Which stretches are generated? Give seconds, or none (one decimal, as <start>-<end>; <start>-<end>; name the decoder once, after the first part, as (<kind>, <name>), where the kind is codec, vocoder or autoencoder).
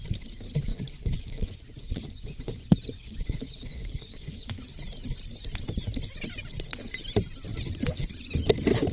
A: 0.7-4.7 (vocoder, Vocos)